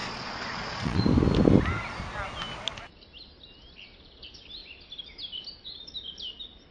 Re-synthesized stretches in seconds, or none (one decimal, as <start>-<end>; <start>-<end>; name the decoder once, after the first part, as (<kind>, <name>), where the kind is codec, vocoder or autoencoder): 0.0-1.0 (vocoder, Vocos)